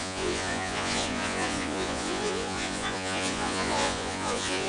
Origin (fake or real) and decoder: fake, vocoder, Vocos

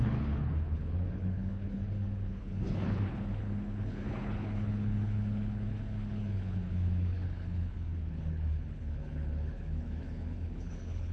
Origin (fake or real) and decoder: fake, codec, HILCodec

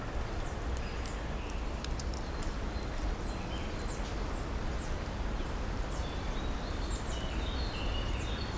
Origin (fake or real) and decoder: real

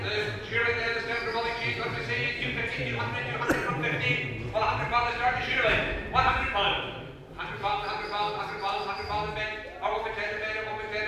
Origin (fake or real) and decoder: real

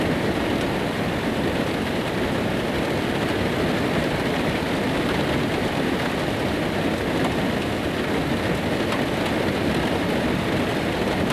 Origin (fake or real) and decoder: real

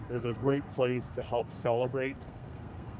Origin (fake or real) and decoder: fake, codec, SNAC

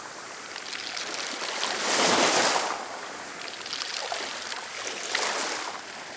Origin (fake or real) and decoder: real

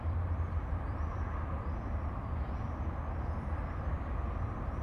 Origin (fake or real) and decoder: real